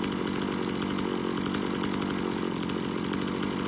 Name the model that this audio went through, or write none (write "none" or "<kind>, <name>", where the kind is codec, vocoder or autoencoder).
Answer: none